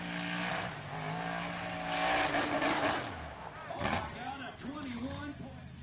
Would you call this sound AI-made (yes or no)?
no